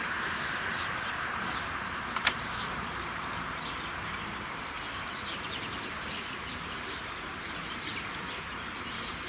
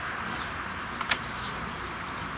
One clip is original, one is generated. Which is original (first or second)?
second